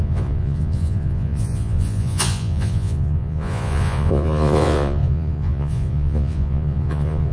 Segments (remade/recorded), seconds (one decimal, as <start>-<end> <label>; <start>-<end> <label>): 0.0-7.3 remade